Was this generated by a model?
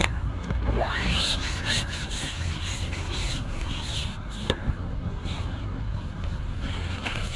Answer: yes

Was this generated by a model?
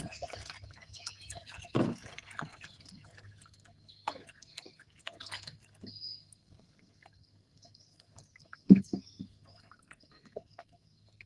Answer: yes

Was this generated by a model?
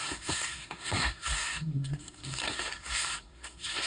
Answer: yes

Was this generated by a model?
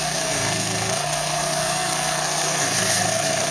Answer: yes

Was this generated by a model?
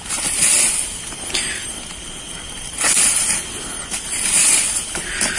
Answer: no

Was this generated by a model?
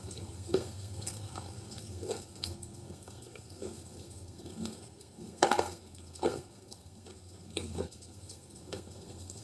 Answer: yes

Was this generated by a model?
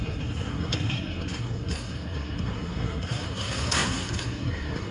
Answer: yes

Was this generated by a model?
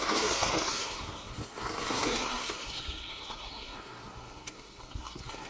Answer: yes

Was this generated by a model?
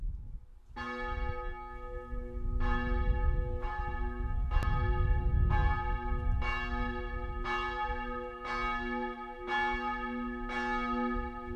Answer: no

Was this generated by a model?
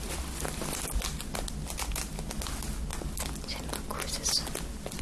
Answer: no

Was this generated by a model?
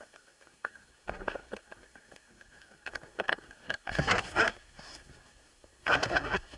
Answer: yes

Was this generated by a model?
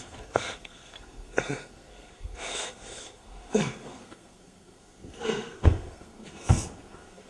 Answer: yes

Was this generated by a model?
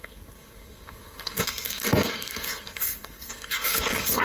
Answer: yes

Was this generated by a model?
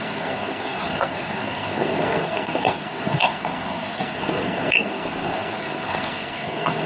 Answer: yes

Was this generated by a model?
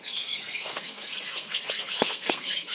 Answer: yes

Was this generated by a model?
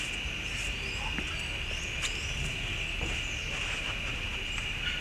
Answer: no